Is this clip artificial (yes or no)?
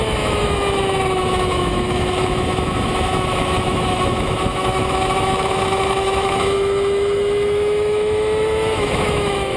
yes